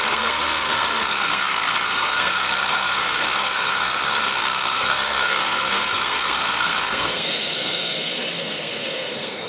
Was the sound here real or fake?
fake